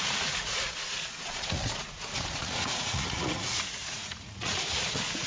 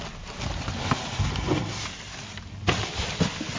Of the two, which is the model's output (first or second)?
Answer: first